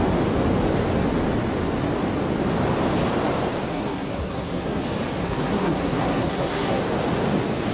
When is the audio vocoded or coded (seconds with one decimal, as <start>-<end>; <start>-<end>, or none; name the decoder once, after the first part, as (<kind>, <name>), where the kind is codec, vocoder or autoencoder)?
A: 3.7-4.8 (codec, SNAC); 5.2-6.8